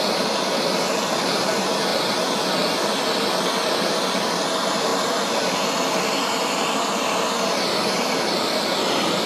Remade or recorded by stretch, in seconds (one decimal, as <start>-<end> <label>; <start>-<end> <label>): 0.0-1.9 remade; 1.9-3.9 recorded; 3.9-9.3 remade